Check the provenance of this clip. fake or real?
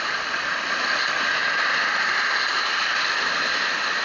real